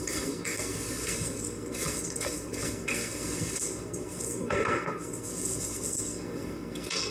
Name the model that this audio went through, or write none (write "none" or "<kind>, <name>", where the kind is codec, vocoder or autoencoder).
codec, SNAC